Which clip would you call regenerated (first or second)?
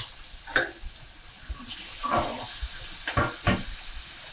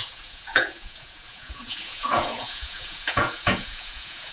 second